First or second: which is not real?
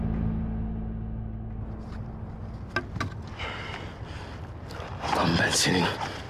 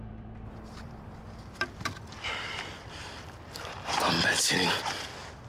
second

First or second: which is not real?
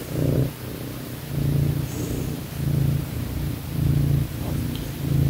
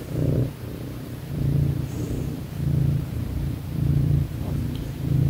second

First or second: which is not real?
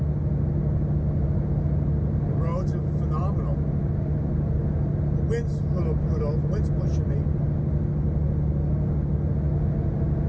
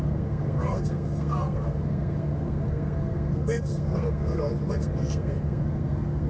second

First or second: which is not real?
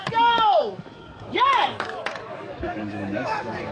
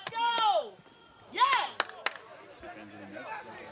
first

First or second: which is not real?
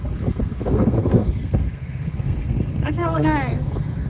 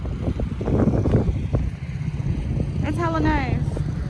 first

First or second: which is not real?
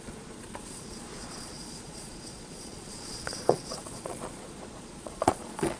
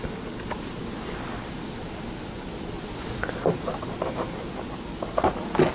first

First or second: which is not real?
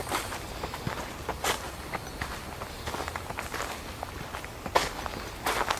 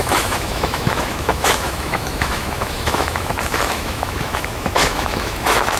second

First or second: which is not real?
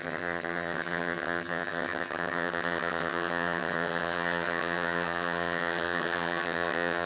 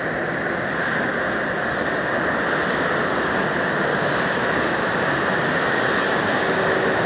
first